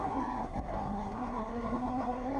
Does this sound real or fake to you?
fake